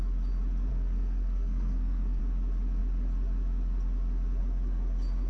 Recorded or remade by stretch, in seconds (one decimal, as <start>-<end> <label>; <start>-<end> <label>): 0.0-0.7 recorded; 0.7-2.2 remade; 2.2-5.3 recorded